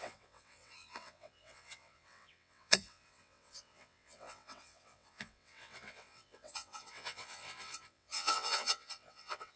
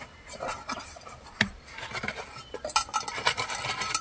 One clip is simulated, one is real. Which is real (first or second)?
second